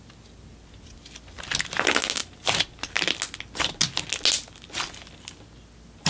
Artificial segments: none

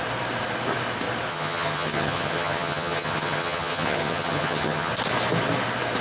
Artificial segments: 1.3-4.9 (vocoder, HiFi-GAN)